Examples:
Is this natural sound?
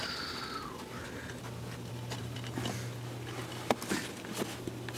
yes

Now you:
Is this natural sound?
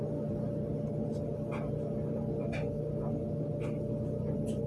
yes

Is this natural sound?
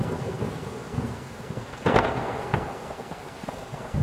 no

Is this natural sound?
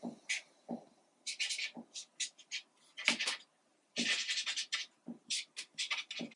yes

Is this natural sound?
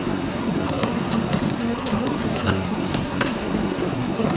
no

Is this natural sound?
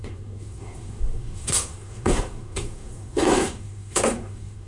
no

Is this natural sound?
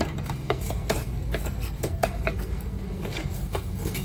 no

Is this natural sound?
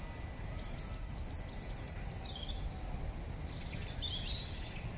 yes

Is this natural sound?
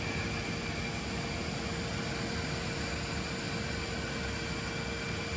yes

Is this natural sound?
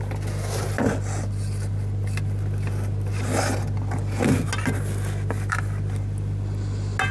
yes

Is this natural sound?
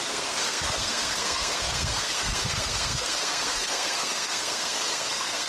no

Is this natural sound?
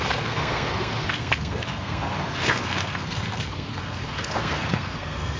no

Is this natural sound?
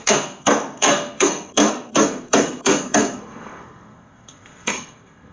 no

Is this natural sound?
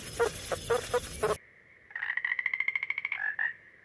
yes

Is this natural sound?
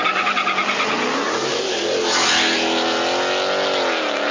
yes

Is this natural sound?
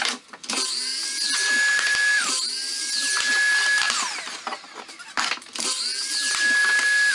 yes